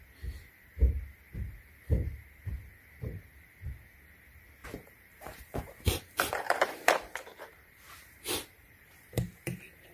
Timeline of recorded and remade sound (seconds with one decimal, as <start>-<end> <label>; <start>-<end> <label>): 0.0-4.6 recorded; 4.6-9.1 remade; 9.1-9.9 recorded

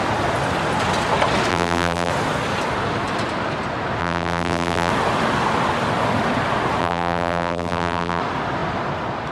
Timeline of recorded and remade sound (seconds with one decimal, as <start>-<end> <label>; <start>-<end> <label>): 0.0-1.5 recorded; 1.5-2.1 remade; 2.1-4.0 recorded; 4.0-4.9 remade; 4.9-6.8 recorded; 6.8-8.2 remade; 8.2-9.3 recorded

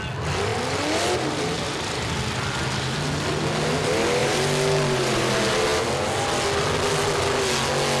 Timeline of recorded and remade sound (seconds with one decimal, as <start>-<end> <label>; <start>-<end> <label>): 0.0-4.2 recorded; 4.2-5.3 remade; 5.3-8.0 recorded